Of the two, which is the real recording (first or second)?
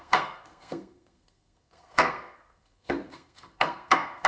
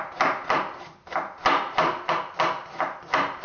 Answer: second